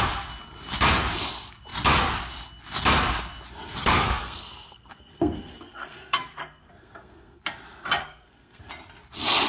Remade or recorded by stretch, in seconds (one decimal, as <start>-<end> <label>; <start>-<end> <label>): 0.0-3.8 recorded; 3.8-7.4 remade; 7.4-8.0 recorded; 8.0-8.6 remade; 8.6-9.5 recorded